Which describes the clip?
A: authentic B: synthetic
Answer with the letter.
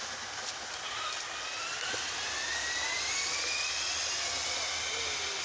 A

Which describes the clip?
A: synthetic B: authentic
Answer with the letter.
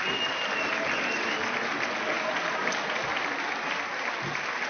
B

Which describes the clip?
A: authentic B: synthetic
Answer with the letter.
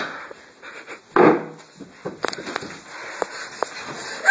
A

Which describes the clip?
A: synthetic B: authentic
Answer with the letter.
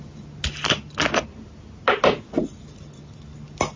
B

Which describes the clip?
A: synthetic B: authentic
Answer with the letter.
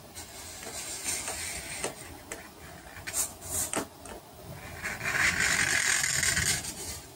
B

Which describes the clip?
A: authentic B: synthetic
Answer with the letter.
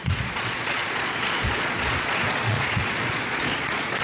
B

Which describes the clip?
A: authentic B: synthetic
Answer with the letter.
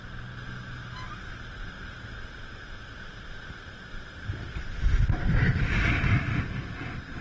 A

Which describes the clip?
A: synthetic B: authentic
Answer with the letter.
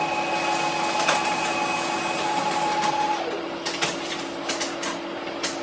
B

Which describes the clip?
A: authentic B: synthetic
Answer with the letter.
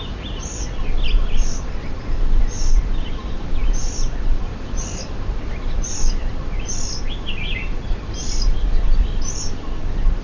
A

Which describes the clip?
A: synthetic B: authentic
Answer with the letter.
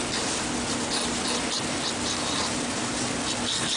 B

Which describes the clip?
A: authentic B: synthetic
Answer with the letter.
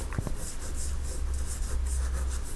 A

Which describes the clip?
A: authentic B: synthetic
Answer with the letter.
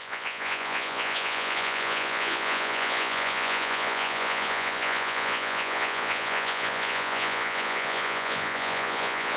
B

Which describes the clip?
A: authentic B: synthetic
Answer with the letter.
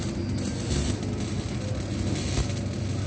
A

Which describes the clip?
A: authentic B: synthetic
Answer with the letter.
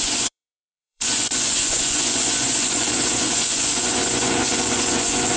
B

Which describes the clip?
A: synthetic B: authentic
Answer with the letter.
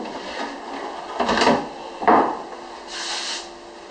B